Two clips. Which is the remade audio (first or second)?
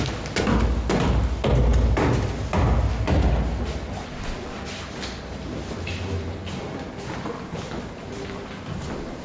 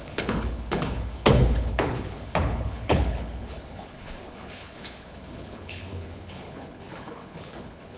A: second